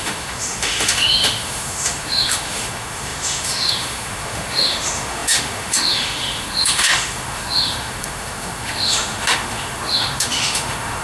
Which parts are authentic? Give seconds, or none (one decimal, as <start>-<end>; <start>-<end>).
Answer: none